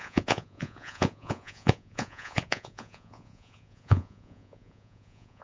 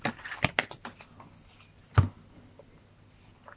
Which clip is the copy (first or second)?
first